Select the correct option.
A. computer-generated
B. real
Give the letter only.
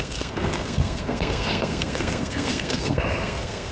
A